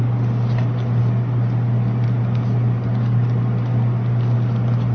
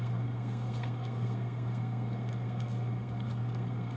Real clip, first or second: first